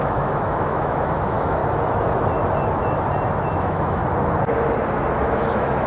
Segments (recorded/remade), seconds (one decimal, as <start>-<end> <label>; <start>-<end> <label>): 0.0-1.6 remade; 1.6-3.6 recorded; 3.6-4.0 remade; 4.0-5.3 recorded; 5.3-5.9 remade